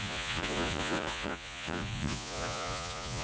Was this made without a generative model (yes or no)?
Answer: no